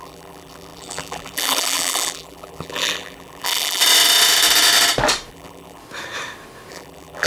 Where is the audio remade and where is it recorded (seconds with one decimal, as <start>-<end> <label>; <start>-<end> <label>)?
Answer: 0.0-3.8 remade; 3.8-5.3 recorded; 5.3-5.8 remade; 5.8-6.7 recorded; 6.7-7.3 remade

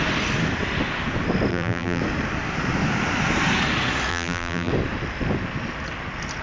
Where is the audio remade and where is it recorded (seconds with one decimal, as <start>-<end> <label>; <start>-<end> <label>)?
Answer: 0.0-1.5 recorded; 1.5-2.0 remade; 2.0-4.1 recorded; 4.1-4.7 remade; 4.7-6.4 recorded

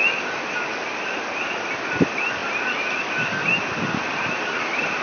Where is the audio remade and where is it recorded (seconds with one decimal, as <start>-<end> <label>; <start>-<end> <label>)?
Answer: 0.0-1.4 recorded; 1.4-2.4 remade; 2.4-4.4 recorded; 4.4-5.0 remade

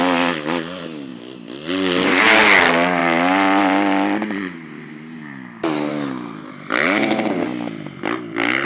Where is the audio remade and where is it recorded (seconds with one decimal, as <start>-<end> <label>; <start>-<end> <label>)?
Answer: 0.0-8.7 recorded

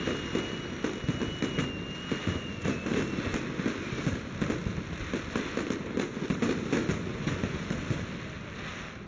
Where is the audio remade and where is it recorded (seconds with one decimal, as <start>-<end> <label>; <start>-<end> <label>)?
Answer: 0.0-2.2 recorded; 2.2-3.0 remade; 3.0-7.1 recorded; 7.1-7.8 remade; 7.8-9.1 recorded

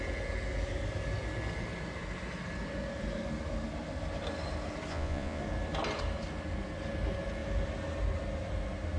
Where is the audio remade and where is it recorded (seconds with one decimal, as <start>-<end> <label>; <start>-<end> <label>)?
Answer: 0.0-4.9 recorded; 4.9-5.4 remade; 5.4-9.0 recorded

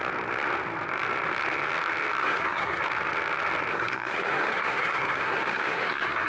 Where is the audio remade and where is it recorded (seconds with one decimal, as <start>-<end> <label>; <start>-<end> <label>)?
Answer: 0.0-2.2 recorded; 2.2-2.8 remade; 2.8-3.7 recorded; 3.7-6.3 remade

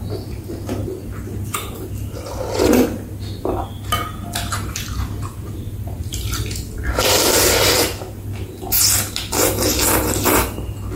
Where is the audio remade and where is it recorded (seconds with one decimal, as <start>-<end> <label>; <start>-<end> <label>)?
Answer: 0.0-11.0 recorded